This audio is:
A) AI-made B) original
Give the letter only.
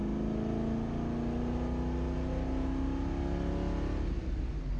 B